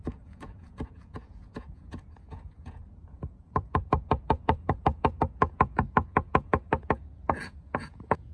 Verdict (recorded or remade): remade